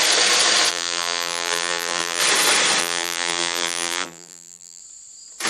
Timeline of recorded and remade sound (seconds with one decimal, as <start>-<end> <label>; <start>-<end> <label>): 0.0-0.7 recorded; 0.7-2.2 remade; 2.2-2.8 recorded; 2.8-4.8 remade; 4.8-5.5 recorded

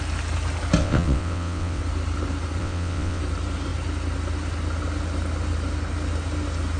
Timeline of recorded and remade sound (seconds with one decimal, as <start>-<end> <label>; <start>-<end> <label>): 0.0-0.8 recorded; 0.8-1.8 remade; 1.8-2.6 recorded; 2.6-3.2 remade; 3.2-6.8 recorded

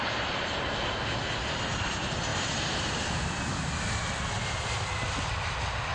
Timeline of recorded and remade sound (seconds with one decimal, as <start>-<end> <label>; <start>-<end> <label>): 0.0-2.3 recorded; 2.3-5.3 remade; 5.3-5.9 recorded

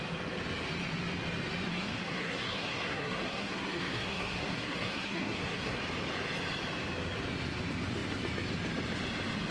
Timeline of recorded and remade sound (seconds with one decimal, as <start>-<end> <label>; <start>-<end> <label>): 0.0-1.7 recorded; 1.7-5.8 remade; 5.8-9.5 recorded